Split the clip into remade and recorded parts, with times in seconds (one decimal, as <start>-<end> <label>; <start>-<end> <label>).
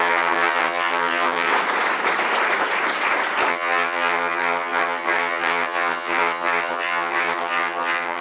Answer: 0.0-1.5 remade; 1.5-3.5 recorded; 3.5-8.2 remade